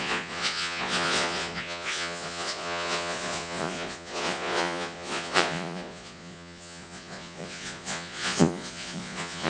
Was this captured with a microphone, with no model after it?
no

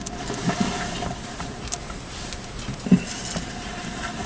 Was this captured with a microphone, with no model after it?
yes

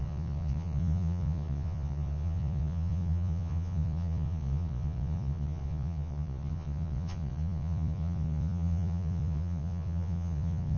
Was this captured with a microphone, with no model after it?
no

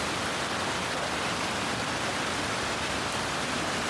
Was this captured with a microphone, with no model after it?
yes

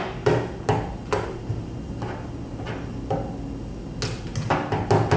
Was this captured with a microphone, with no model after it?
yes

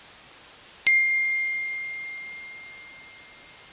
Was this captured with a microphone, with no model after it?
yes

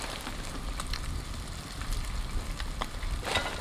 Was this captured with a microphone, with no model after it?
yes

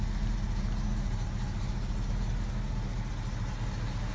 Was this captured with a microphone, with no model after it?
yes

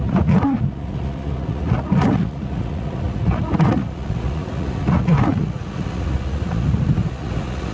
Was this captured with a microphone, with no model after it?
no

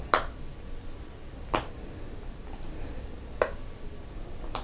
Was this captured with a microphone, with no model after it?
yes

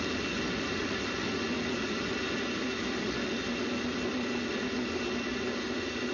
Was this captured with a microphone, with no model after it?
yes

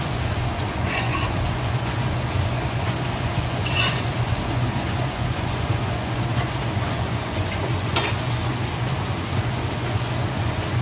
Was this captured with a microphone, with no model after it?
no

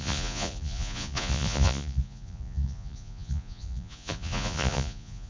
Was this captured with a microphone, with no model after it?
no